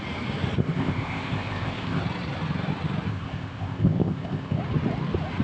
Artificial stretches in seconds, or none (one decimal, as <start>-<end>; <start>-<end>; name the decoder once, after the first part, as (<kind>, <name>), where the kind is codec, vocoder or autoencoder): 0.6-2.0 (codec, ZipCodec); 3.1-4.6